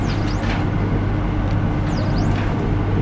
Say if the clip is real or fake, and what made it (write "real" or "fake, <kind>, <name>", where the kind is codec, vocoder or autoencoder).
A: real